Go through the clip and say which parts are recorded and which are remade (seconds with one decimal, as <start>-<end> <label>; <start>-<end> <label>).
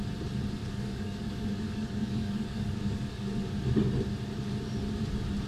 0.0-0.6 recorded; 0.6-3.4 remade; 3.4-5.5 recorded